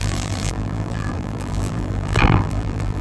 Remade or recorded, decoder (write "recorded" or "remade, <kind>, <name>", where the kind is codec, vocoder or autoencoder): remade, vocoder, BigVGAN v2